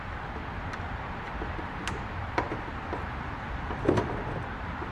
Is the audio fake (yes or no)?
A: no